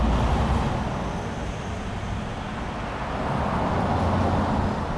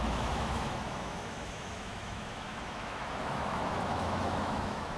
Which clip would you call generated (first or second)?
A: second